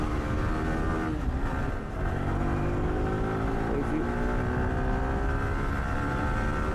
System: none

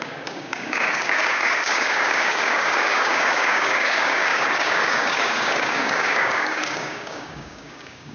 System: codec, DAC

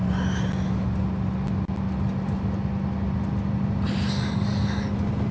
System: none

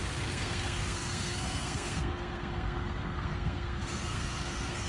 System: codec, SNAC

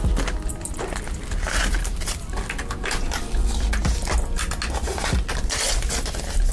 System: none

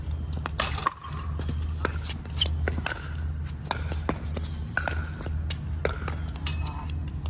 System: none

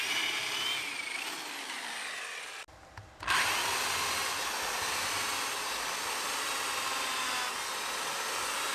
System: none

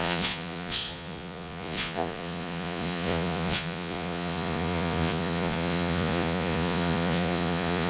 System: vocoder, Vocos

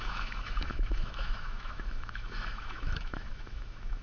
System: autoencoder, DAC-VAE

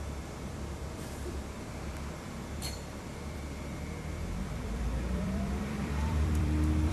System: vocoder, BigVGAN v2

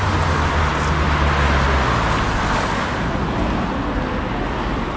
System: none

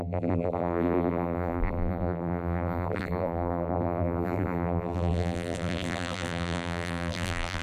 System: vocoder, BigVGAN v2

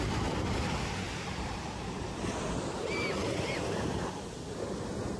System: none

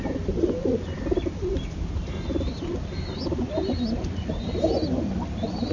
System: none